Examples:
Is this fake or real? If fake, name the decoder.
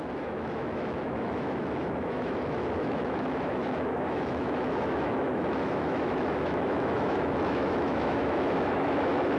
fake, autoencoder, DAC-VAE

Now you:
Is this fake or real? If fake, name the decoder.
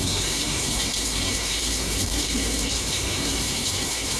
fake, codec, SNAC